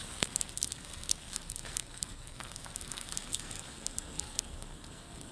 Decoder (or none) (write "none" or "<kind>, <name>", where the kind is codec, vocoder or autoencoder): codec, SNAC